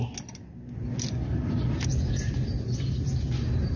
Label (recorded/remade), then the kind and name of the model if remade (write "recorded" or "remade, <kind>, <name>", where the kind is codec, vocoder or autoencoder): recorded